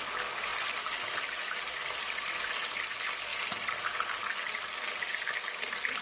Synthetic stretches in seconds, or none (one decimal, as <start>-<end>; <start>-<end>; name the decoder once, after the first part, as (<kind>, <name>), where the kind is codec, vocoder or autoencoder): 0.5-2.5 (vocoder, BigVGAN v2); 3.3-4.2; 5.1-6.0